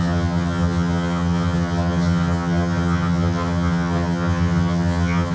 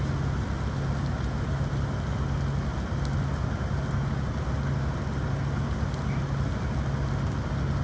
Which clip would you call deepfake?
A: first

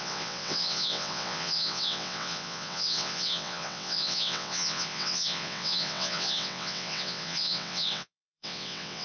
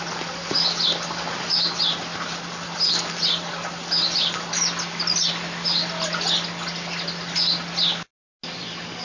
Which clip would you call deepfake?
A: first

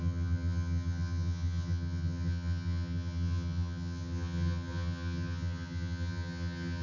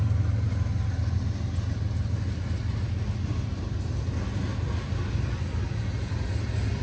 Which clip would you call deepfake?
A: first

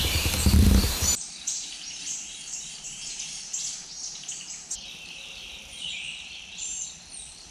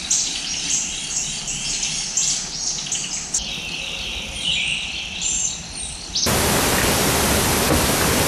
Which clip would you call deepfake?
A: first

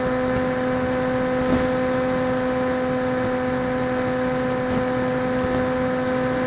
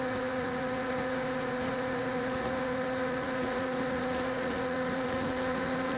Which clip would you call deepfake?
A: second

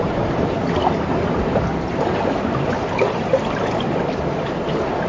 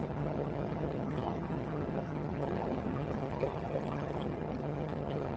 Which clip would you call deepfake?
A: second